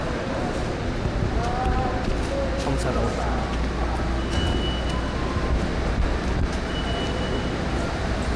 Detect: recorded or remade recorded